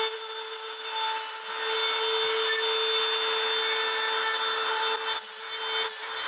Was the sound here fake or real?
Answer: real